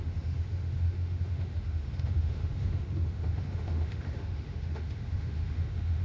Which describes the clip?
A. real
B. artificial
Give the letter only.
B